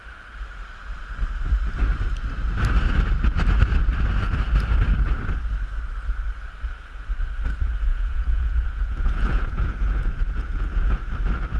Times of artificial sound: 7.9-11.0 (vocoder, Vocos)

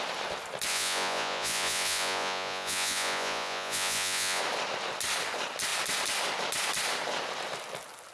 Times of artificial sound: 0.7-4.4 (vocoder, Vocos)

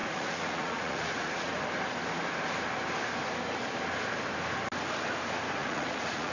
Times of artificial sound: 0.0-1.5 (vocoder, Vocos); 5.6-6.3

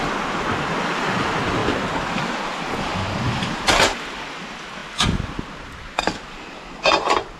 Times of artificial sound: none

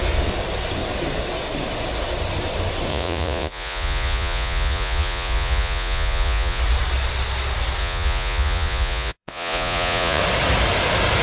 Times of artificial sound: 2.9-6.6 (vocoder, Vocos); 7.8-10.2

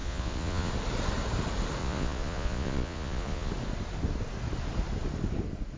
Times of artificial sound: 0.0-0.7 (vocoder, Vocos); 1.8-3.5

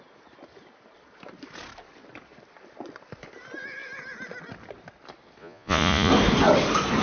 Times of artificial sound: 5.4-6.1 (vocoder, Vocos)